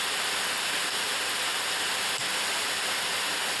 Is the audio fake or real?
real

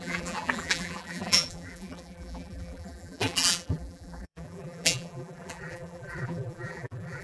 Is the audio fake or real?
fake